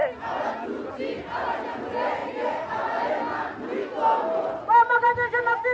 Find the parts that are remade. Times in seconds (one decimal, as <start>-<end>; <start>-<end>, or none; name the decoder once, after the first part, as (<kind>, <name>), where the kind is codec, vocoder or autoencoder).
2.2-3.0 (vocoder, Vocos)